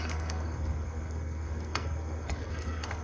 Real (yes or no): no